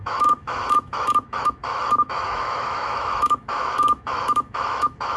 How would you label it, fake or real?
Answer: fake